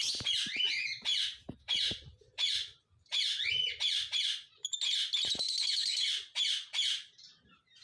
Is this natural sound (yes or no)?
no